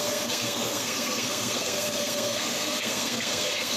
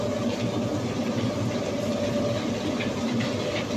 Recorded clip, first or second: second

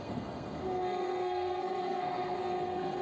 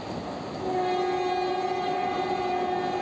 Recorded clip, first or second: second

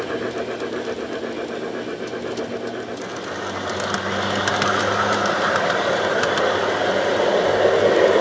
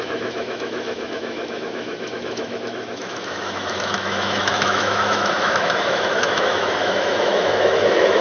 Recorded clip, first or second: first